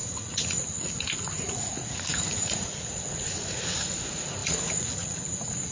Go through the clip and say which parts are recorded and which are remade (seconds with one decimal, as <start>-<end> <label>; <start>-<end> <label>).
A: 0.0-5.7 remade